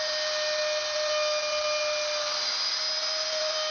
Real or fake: real